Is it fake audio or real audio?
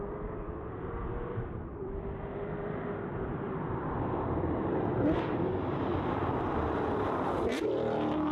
fake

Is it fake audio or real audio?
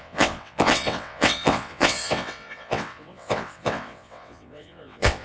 fake